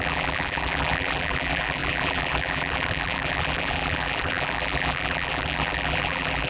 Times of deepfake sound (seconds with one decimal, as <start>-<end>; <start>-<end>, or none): 0.0-6.5